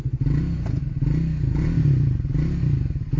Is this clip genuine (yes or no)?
yes